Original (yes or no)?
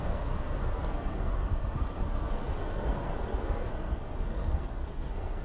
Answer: no